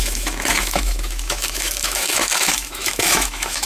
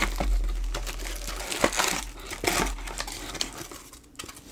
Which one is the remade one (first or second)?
first